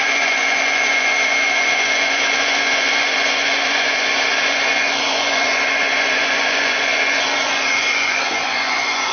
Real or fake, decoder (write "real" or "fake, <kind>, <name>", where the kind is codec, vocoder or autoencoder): fake, vocoder, Vocos